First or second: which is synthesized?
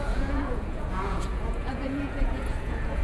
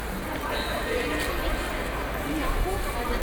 first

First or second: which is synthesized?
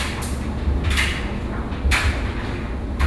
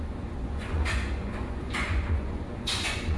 second